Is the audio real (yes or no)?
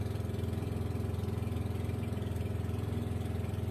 yes